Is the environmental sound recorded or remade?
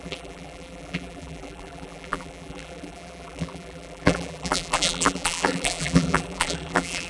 remade